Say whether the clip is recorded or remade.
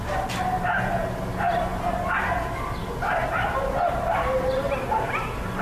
recorded